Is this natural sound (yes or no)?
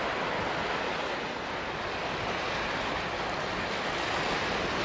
yes